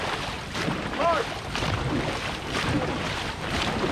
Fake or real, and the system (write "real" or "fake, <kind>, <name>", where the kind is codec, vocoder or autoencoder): fake, vocoder, BigVGAN v2